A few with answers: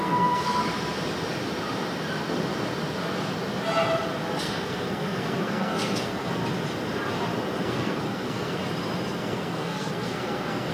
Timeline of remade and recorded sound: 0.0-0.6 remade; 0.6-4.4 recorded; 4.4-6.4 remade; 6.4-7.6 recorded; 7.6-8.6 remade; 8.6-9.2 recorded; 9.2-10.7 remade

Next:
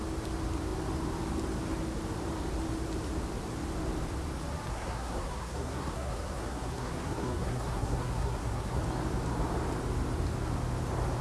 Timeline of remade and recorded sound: 0.0-4.7 recorded; 4.7-8.8 remade; 8.8-11.2 recorded

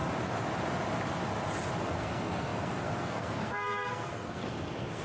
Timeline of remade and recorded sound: 0.0-1.8 recorded; 1.8-5.0 remade

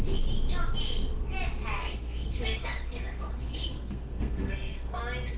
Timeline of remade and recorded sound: 0.0-1.8 recorded; 1.8-5.0 remade; 5.0-5.4 recorded

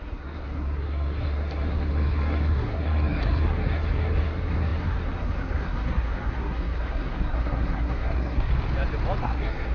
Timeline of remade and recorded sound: 0.0-8.5 remade; 8.5-9.2 recorded; 9.2-9.7 remade

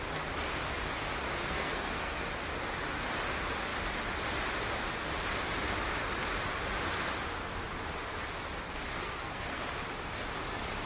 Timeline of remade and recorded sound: 0.0-1.4 recorded; 1.4-2.2 remade; 2.2-8.9 recorded; 8.9-9.6 remade; 9.6-10.9 recorded

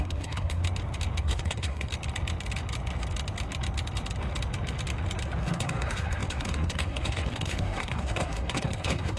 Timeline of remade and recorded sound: 0.0-0.6 remade; 0.6-1.2 recorded; 1.2-1.9 remade; 1.9-5.4 recorded; 5.4-9.2 remade

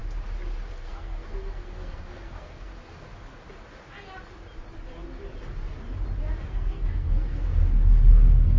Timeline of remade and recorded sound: 0.0-0.7 recorded; 0.7-2.7 remade; 2.7-6.4 recorded; 6.4-7.6 remade; 7.6-8.1 recorded; 8.1-8.6 remade